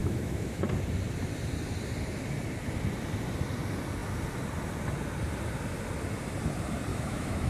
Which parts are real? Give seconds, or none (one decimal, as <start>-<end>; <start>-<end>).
0.6-6.9

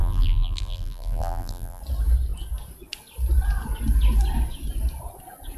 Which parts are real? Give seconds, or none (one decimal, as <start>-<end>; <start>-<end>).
1.8-5.6

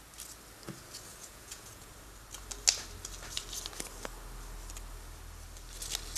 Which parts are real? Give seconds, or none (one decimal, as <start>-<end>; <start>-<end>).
0.0-1.1; 1.9-6.2

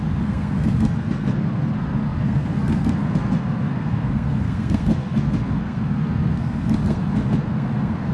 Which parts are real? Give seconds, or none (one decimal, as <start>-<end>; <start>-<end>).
none

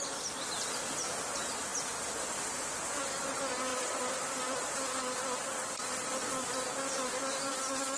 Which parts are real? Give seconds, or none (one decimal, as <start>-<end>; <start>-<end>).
0.0-8.0

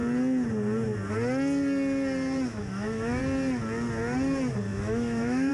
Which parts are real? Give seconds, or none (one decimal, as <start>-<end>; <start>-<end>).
0.0-2.5; 3.2-4.7

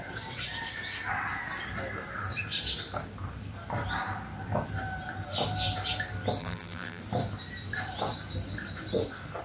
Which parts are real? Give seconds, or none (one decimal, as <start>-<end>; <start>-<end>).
0.0-6.4; 7.0-9.4